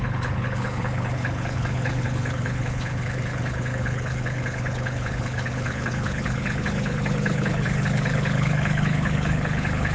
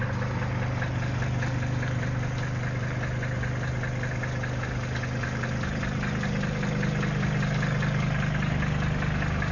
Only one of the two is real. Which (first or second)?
second